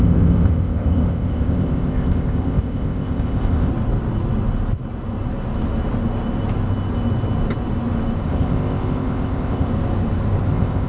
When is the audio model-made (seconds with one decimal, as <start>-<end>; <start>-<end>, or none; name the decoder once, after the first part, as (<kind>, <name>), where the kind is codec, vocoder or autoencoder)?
0.0-3.7 (codec, ZipCodec); 8.3-9.7; 10.5-10.9